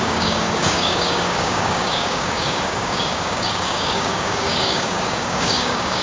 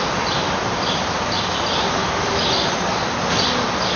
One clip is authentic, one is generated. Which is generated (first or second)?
first